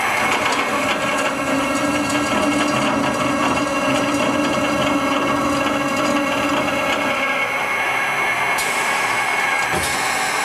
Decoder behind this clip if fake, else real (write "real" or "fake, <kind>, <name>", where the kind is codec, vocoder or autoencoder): real